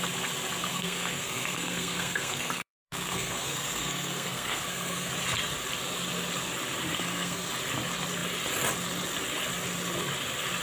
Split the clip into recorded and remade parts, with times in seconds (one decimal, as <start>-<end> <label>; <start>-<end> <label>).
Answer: 0.0-0.7 recorded; 0.7-5.1 remade; 5.1-6.9 recorded; 6.9-7.5 remade; 7.5-10.6 recorded